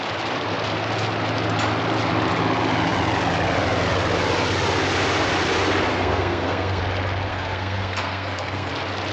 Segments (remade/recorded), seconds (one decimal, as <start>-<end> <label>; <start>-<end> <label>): 0.0-5.9 recorded; 5.9-6.8 remade; 6.8-7.3 recorded; 7.3-8.7 remade; 8.7-9.1 recorded